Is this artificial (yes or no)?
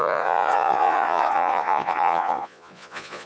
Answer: yes